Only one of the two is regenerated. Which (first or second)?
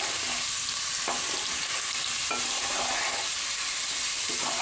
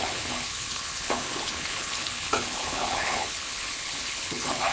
second